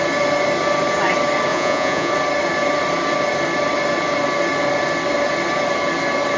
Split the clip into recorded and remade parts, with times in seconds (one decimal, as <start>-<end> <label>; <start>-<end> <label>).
0.0-1.5 recorded; 1.5-2.1 remade; 2.1-6.4 recorded